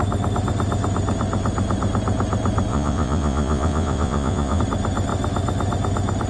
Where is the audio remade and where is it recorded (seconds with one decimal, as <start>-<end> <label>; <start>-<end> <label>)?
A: 0.0-2.7 recorded; 2.7-4.6 remade; 4.6-6.3 recorded